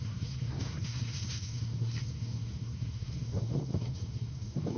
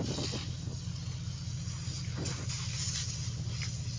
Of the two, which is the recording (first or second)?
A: second